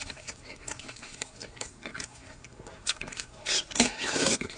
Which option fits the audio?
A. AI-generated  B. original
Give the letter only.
A